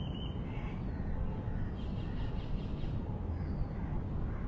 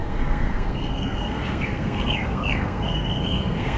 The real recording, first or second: first